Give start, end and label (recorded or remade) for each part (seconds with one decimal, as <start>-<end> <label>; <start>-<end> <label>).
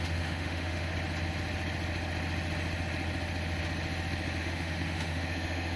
0.0-0.9 remade; 0.9-4.4 recorded; 4.4-5.8 remade